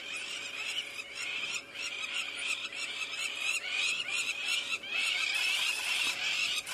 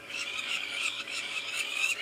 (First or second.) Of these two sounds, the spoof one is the second